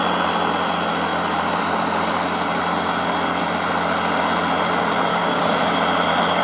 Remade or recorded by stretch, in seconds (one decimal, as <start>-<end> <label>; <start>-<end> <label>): 0.0-5.1 recorded; 5.1-5.6 remade; 5.6-6.4 recorded